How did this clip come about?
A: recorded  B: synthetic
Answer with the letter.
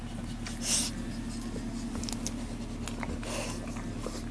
A